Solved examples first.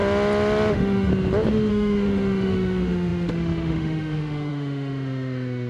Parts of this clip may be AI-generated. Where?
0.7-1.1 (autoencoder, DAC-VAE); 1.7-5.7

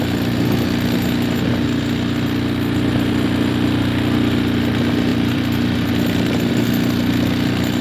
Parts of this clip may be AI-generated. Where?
5.1-5.9 (vocoder, BigVGAN v2)

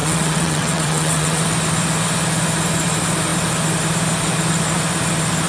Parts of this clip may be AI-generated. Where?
0.0-1.4 (vocoder, WaveNeXt)

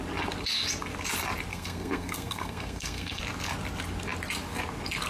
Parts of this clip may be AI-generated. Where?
1.5-3.2 (codec, SNAC)

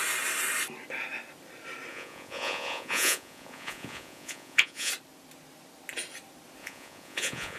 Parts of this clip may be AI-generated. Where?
1.9-4.9 (vocoder, Vocos); 6.6-7.6

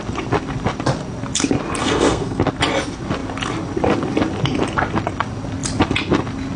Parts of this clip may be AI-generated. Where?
1.8-2.4 (codec, SNAC)

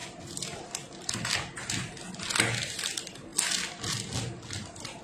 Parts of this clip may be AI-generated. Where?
none

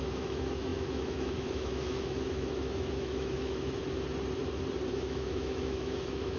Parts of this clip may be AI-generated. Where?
0.0-3.8 (autoencoder, DAC-VAE); 4.9-6.4